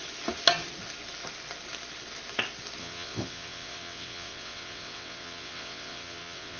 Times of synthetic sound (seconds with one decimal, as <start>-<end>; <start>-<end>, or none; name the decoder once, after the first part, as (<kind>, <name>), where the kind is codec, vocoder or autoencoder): 2.8-6.6 (vocoder, WaveNeXt)